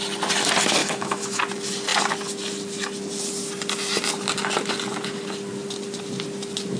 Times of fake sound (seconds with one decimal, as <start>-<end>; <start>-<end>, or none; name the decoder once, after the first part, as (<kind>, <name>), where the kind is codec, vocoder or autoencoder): 0.8-1.4 (autoencoder, DAC-VAE)